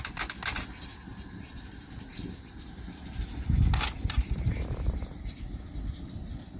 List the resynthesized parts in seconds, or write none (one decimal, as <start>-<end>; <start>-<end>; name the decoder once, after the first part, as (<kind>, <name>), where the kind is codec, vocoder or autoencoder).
none